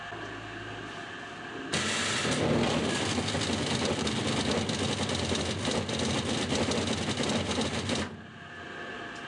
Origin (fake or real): real